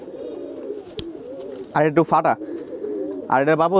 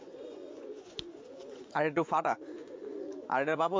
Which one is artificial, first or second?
second